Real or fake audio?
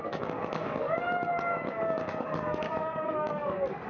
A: fake